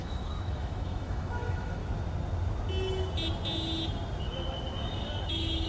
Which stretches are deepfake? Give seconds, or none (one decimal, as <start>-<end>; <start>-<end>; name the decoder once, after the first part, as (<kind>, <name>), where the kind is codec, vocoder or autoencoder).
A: 0.0-1.8 (autoencoder, DAC-VAE); 5.2-5.7